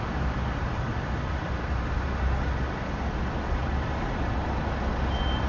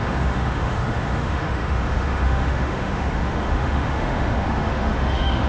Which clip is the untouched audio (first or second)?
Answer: first